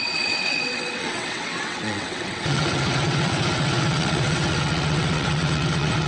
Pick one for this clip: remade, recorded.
remade